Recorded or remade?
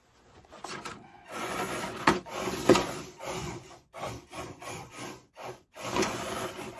remade